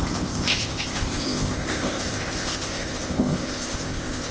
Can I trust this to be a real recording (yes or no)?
no